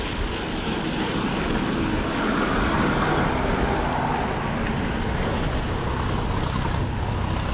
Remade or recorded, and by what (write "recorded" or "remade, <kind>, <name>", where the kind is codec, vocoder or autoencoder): recorded